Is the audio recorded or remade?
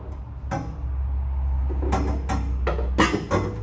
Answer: recorded